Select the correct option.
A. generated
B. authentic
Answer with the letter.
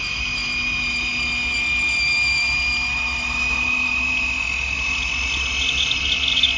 B